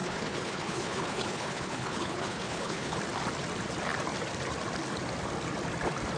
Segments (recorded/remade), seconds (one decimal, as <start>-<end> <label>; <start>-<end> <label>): 0.0-3.0 remade; 3.0-6.2 recorded